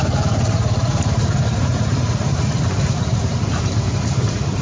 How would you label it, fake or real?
fake